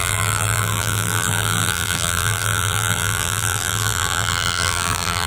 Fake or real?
fake